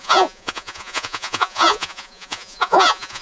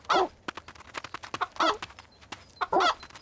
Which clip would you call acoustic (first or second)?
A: second